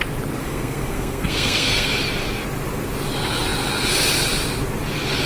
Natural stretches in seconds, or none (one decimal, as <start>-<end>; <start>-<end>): 0.0-0.4; 1.9-5.3